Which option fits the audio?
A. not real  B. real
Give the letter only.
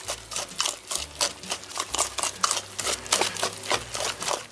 B